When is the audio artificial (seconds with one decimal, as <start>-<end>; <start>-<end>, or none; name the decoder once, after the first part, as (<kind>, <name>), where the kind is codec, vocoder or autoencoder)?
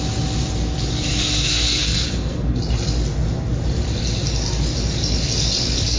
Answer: 1.1-2.6 (codec, SNAC)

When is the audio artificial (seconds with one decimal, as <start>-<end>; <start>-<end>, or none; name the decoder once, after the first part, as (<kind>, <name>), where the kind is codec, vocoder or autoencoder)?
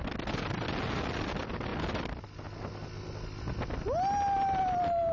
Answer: none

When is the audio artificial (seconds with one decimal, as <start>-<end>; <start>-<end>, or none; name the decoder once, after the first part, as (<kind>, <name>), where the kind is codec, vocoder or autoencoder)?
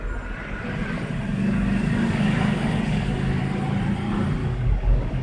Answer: 1.3-3.4 (codec, DAC); 4.4-5.2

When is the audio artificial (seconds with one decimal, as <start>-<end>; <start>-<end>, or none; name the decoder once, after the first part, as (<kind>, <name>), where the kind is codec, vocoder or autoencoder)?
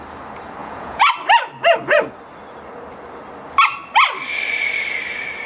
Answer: 0.6-1.1 (vocoder, Vocos)